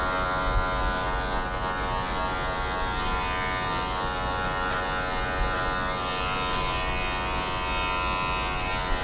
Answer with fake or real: real